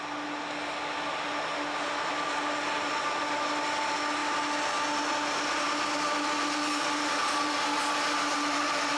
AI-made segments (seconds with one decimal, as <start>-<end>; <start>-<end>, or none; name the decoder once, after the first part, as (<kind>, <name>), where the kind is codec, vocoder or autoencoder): none